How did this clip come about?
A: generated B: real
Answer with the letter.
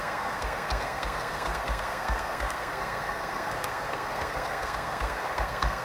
A